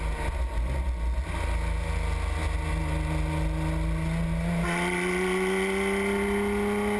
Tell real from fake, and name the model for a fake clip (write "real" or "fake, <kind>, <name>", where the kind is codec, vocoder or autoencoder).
real